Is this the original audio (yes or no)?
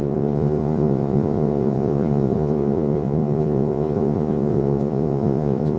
no